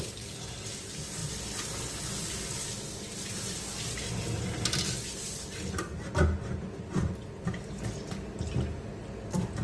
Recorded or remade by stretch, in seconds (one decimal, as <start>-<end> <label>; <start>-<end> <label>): 0.0-9.6 recorded